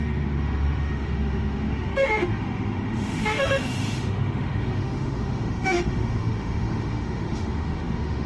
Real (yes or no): no